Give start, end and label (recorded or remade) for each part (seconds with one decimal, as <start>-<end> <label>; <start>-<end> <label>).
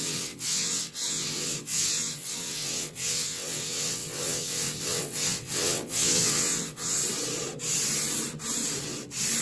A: 0.0-7.0 remade; 7.0-9.4 recorded